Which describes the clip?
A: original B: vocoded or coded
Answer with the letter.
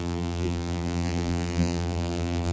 B